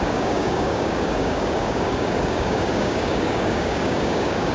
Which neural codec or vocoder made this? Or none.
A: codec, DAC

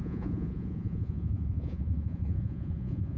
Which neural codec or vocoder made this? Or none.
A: vocoder, Vocos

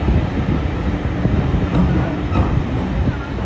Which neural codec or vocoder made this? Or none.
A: none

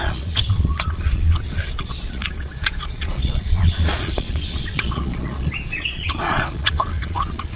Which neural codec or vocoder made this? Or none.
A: vocoder, Vocos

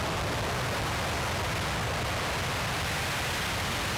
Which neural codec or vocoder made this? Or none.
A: none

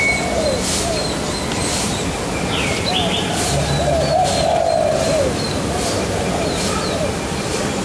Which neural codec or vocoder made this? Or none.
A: none